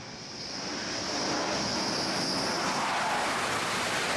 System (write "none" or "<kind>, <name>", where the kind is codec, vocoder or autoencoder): none